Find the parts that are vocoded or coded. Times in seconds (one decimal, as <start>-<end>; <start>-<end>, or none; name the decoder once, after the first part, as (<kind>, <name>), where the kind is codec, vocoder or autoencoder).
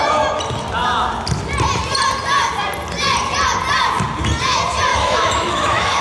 4.9-6.0 (autoencoder, DAC-VAE)